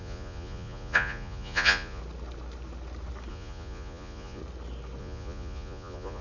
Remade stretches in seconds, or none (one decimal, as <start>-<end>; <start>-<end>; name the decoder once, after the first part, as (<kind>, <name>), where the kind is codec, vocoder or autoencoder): 0.0-2.0 (vocoder, Vocos); 3.3-4.4; 5.0-6.2